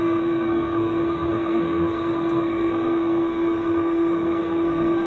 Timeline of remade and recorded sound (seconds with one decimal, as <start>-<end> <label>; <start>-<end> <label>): 0.0-5.1 remade

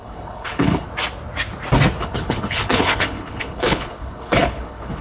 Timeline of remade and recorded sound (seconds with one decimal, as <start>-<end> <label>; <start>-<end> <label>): 0.0-0.9 remade; 0.9-2.0 recorded; 2.0-5.0 remade

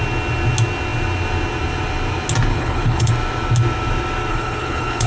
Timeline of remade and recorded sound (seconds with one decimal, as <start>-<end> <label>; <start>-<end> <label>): 0.0-2.5 recorded; 2.5-3.1 remade; 3.1-4.3 recorded; 4.3-5.1 remade

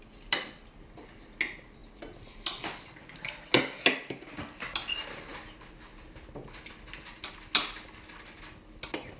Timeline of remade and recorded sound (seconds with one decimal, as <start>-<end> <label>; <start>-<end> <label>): 0.0-9.2 recorded